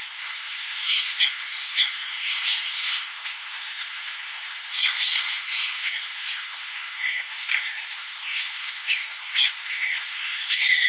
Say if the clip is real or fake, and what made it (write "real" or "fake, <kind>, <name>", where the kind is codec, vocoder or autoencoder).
fake, codec, SNAC